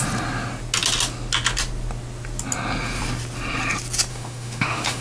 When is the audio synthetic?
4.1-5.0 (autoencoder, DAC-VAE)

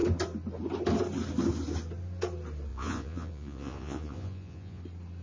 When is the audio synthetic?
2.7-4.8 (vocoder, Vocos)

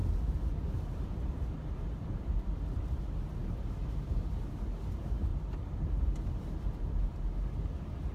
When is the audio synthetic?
none

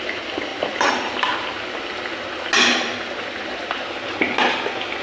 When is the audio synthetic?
none

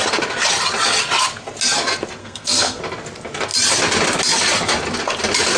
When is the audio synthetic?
2.2-2.8 (codec, SNAC)